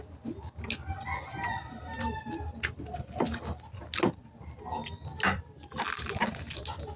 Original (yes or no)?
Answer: yes